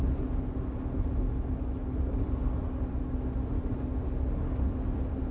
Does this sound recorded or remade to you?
recorded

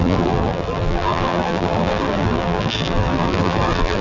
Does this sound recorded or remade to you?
remade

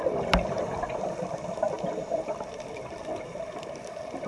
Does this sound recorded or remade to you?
remade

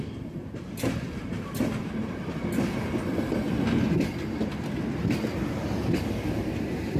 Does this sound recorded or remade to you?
recorded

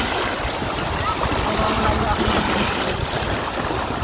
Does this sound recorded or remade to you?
recorded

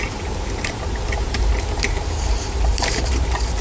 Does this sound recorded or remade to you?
remade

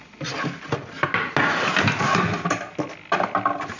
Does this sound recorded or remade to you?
recorded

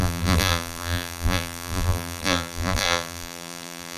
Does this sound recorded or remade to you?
remade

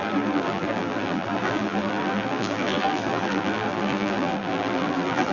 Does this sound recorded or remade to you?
remade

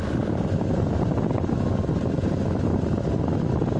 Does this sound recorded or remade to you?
recorded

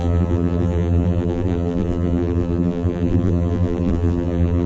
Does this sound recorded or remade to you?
remade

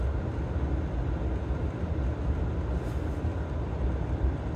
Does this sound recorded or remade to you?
recorded